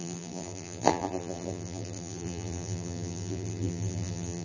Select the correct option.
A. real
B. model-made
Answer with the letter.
B